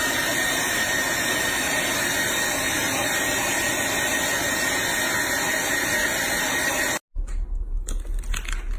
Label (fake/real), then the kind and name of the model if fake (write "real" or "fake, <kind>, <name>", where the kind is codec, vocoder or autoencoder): real